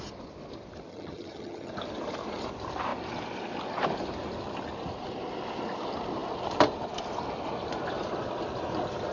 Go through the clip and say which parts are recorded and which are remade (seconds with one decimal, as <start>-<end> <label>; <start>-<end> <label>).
0.0-0.9 recorded; 0.9-1.7 remade; 1.7-9.1 recorded